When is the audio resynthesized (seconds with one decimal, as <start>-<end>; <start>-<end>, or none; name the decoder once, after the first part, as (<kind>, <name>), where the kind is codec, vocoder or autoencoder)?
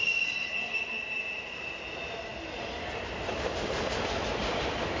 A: none